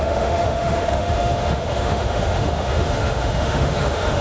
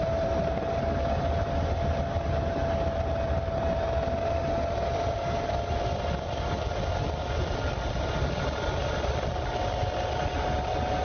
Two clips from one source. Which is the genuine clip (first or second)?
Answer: second